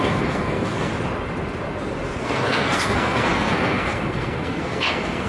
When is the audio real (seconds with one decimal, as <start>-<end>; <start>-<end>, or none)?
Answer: 0.9-2.2